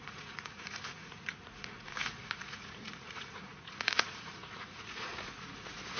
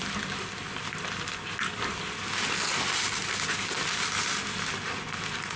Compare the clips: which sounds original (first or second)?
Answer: second